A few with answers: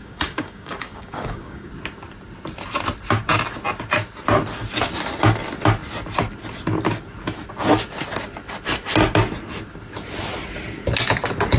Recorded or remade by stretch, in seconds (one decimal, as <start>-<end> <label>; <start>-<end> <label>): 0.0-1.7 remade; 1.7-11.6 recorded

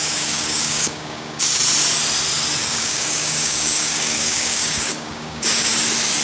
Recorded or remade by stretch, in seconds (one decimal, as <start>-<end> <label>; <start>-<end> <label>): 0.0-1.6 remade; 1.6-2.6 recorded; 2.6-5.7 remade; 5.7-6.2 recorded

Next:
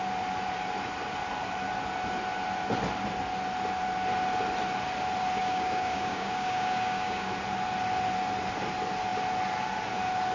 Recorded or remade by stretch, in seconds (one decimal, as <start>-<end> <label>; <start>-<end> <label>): 0.0-5.4 recorded; 5.4-7.3 remade; 7.3-10.3 recorded

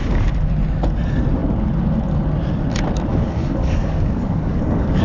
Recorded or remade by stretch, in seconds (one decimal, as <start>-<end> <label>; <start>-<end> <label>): 0.0-0.5 remade; 0.5-3.1 recorded; 3.1-5.0 remade

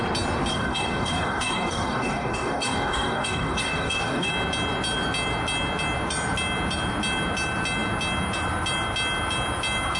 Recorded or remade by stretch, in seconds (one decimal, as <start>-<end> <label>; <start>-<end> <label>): 0.0-0.5 recorded; 0.5-4.3 remade; 4.3-10.0 recorded